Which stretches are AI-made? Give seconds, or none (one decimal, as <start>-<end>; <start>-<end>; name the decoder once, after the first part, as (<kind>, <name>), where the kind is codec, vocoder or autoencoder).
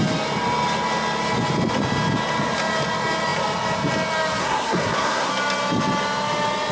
4.4-5.3 (codec, SNAC)